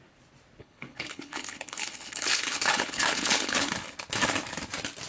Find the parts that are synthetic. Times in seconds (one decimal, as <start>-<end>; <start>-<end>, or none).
0.6-3.7